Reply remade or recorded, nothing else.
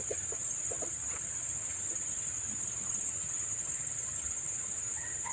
remade